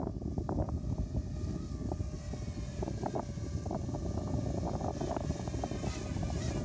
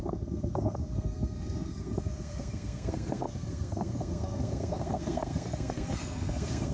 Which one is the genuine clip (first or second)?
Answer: first